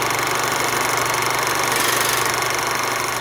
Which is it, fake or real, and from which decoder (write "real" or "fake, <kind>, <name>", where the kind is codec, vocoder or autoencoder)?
real